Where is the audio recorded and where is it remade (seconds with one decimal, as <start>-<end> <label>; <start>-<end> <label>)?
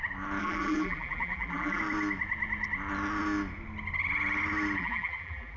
0.0-0.4 recorded; 0.4-1.8 remade; 1.8-4.8 recorded; 4.8-5.6 remade